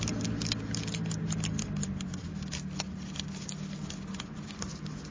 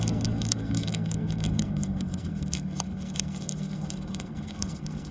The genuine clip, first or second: first